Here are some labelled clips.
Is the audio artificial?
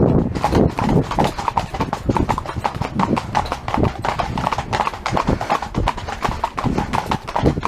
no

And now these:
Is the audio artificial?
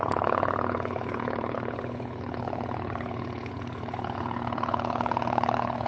yes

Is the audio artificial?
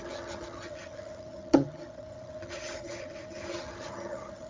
yes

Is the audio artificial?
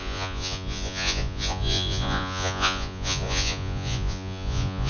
yes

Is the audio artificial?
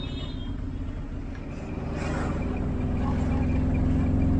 no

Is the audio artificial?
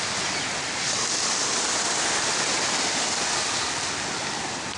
no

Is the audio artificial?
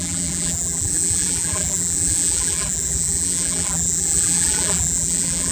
yes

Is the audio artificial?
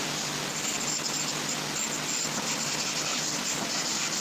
no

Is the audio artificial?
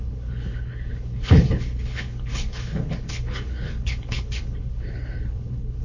yes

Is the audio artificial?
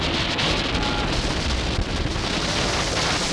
no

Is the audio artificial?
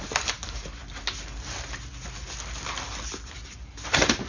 no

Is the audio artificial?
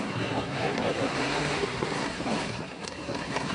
yes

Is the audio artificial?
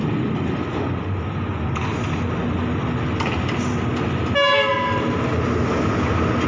no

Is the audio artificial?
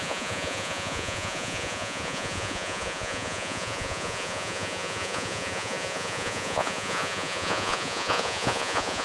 yes